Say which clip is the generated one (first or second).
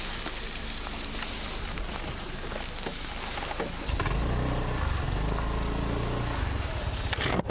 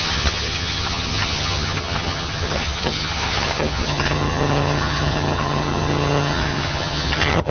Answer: second